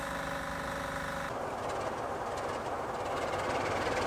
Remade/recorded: recorded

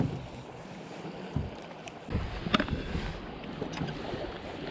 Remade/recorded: recorded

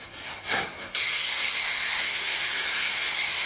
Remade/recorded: remade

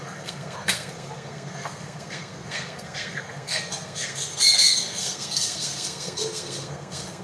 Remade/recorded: remade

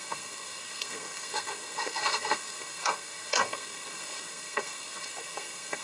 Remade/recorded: remade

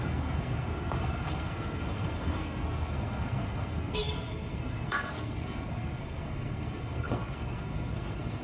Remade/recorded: remade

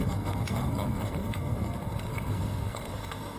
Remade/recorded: remade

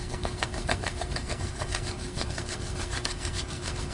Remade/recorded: remade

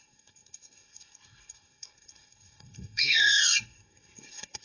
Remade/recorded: remade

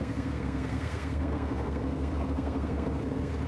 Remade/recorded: remade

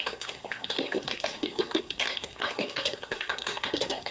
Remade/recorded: remade